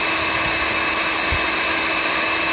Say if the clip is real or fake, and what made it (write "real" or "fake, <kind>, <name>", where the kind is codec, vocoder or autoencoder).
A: real